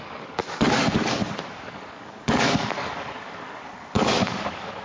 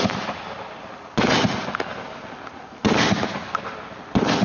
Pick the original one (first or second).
second